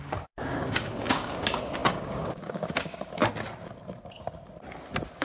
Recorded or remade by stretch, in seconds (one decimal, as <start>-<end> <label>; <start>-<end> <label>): 0.0-3.2 remade; 3.2-5.2 recorded